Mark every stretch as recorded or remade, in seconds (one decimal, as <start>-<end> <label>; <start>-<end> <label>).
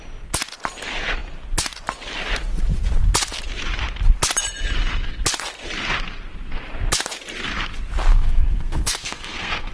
0.0-8.1 recorded; 8.1-9.7 remade